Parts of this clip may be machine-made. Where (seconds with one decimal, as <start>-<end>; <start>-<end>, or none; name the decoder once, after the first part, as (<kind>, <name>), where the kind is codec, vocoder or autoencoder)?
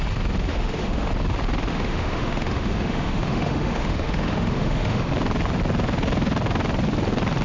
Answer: 0.5-1.1 (autoencoder, DAC-VAE); 1.7-5.1